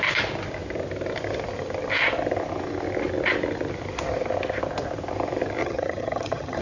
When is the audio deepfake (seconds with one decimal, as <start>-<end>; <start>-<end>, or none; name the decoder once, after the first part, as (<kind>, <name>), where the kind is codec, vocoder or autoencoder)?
5.6-6.6 (vocoder, HiFi-GAN)